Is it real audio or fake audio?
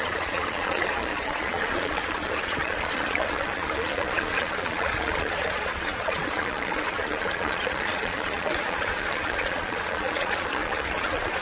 fake